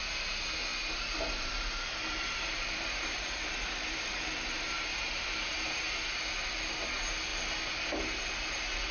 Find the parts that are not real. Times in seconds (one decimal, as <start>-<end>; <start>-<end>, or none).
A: 0.7-5.7